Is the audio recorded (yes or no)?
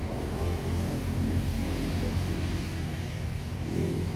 no